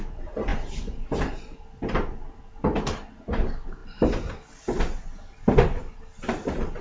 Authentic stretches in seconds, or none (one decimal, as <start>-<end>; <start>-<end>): 0.0-6.8